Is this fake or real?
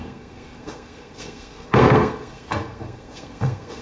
fake